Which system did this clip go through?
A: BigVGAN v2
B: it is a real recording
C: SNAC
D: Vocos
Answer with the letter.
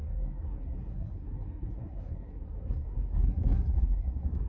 C